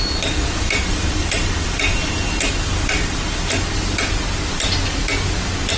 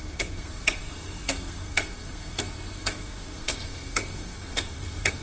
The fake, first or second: second